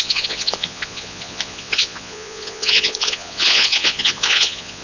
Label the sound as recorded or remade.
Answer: remade